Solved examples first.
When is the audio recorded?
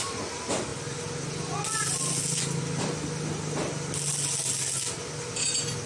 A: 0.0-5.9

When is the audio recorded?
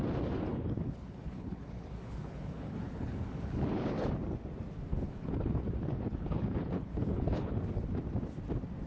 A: 0.0-0.5; 4.1-4.9; 7.6-8.9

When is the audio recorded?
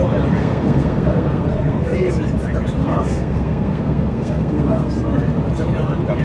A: 0.0-0.4; 2.1-2.8; 4.9-6.2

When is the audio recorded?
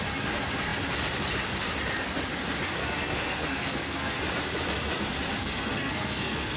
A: 0.0-2.8; 4.2-5.4